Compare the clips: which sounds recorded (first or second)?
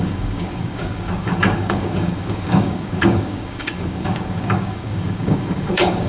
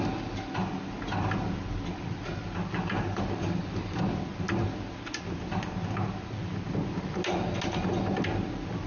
second